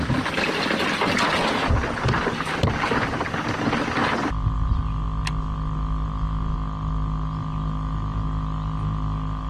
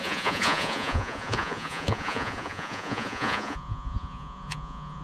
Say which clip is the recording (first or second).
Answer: first